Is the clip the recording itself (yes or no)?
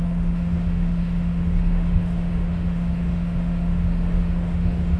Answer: no